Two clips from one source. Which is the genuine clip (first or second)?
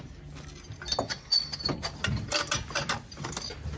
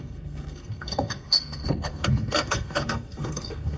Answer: first